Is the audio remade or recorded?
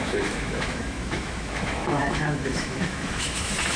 remade